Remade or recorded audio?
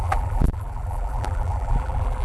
remade